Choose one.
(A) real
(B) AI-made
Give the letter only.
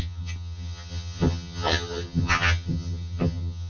B